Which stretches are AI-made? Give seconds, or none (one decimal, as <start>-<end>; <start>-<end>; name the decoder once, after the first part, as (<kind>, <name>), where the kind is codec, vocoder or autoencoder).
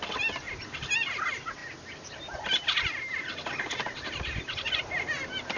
none